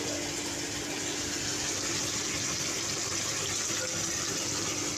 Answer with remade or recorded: recorded